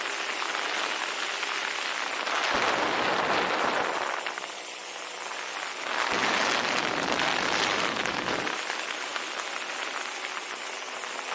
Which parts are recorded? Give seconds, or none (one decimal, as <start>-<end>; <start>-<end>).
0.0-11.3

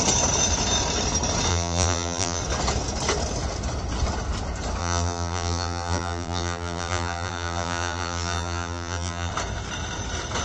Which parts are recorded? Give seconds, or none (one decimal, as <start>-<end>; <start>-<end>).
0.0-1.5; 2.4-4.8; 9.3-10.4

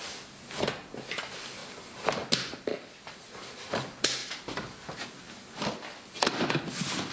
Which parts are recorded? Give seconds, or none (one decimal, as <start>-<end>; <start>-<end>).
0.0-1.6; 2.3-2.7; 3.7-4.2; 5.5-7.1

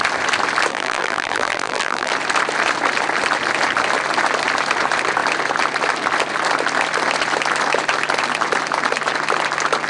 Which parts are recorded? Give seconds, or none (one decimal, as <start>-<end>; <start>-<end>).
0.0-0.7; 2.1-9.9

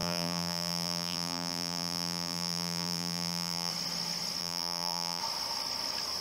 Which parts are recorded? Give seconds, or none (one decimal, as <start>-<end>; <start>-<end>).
3.7-4.4; 5.2-6.2

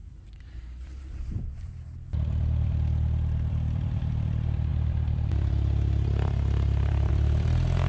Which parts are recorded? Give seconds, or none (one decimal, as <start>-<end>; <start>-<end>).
none

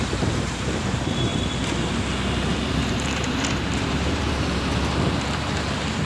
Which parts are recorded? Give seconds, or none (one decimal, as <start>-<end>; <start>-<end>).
1.3-2.9

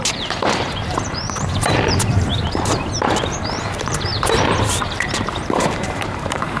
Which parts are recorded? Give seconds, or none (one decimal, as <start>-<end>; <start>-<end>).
2.3-3.4; 4.1-4.8